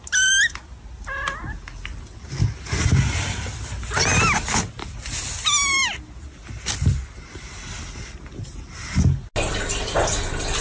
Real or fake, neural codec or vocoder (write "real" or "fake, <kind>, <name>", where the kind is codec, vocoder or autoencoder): real